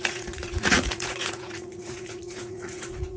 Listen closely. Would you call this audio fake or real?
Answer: fake